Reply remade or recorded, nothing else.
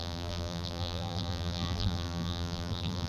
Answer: remade